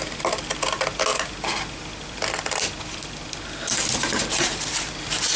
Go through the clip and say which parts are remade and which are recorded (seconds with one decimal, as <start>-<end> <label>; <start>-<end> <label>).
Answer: 0.0-5.4 recorded